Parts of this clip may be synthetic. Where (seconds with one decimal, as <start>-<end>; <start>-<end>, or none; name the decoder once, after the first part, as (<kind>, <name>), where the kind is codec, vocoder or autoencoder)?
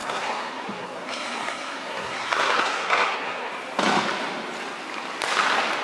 0.0-3.5 (codec, SNAC)